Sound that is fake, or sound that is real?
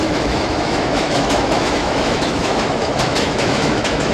fake